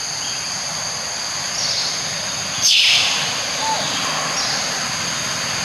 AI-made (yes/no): no